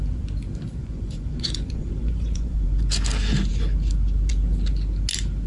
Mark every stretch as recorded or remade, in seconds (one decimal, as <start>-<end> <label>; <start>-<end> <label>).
0.0-0.8 recorded; 0.8-2.8 remade; 2.8-5.5 recorded